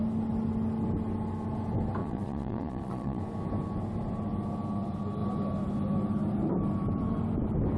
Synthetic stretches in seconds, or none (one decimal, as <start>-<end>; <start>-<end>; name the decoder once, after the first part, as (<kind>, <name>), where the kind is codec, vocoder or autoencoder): 2.0-3.2 (vocoder, Vocos)